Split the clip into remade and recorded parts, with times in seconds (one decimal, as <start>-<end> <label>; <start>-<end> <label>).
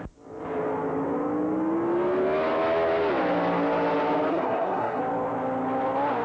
0.0-4.3 recorded; 4.3-5.0 remade; 5.0-6.2 recorded